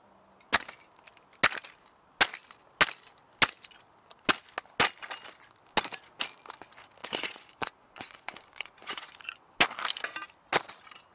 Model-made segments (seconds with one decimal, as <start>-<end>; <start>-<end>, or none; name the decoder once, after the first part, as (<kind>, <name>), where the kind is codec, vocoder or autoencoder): 7.0-9.1 (vocoder, Vocos)